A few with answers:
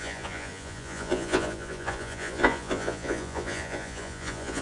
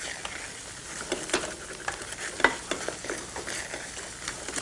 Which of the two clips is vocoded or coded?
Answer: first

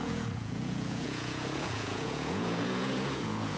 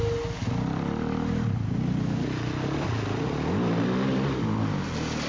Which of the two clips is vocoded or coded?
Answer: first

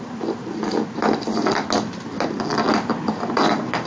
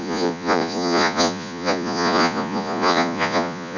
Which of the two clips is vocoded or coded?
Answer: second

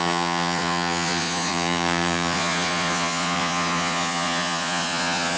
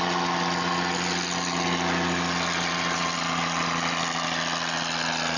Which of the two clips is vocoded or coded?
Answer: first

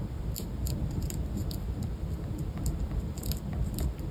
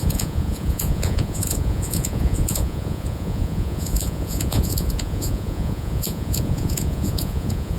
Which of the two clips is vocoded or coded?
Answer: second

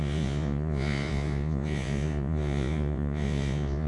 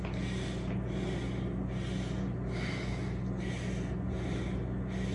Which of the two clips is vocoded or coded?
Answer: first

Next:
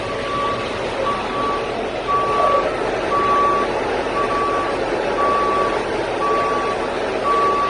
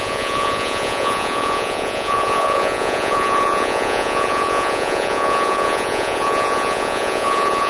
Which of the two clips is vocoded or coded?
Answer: second